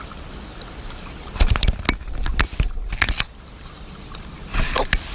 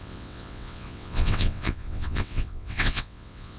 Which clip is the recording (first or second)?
first